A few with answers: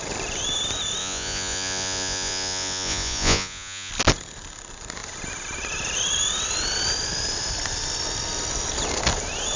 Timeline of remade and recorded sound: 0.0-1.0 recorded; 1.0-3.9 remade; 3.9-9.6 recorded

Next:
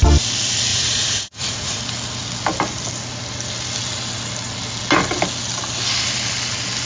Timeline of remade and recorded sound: 0.0-0.7 recorded; 0.7-1.8 remade; 1.8-6.9 recorded

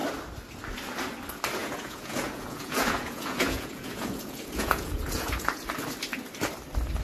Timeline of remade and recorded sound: 0.0-1.6 recorded; 1.6-5.7 remade; 5.7-7.0 recorded

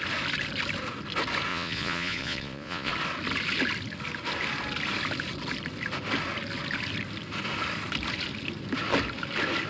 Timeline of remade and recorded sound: 0.0-1.5 recorded; 1.5-2.9 remade; 2.9-9.7 recorded

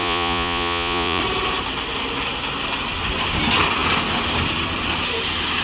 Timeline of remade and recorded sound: 0.0-1.2 remade; 1.2-5.6 recorded

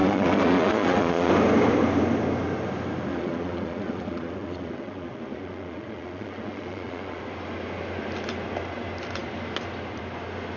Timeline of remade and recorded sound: 0.0-1.3 remade; 1.3-3.1 recorded; 3.1-7.2 remade; 7.2-10.6 recorded

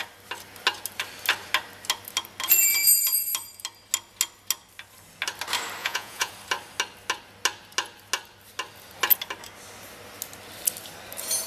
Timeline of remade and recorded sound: 0.0-5.8 recorded; 5.8-6.3 remade; 6.3-11.5 recorded

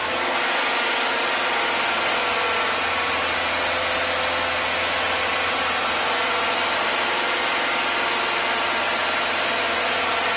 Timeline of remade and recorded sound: 0.0-10.4 recorded